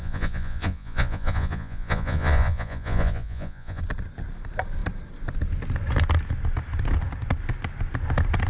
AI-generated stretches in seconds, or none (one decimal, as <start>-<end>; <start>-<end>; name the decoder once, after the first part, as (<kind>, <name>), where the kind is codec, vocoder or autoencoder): 0.0-3.8 (vocoder, Vocos)